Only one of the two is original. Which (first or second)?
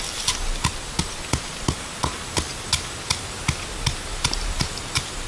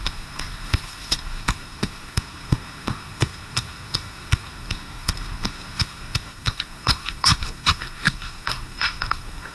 first